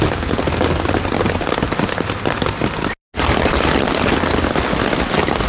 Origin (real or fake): real